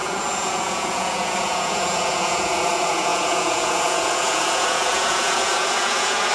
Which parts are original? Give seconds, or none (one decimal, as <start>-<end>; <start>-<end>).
none